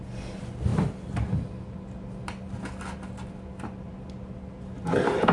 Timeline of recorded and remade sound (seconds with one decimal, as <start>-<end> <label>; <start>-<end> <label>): 0.0-5.3 recorded